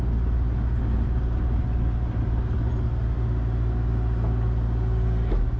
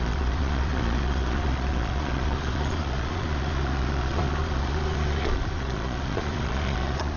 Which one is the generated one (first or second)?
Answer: second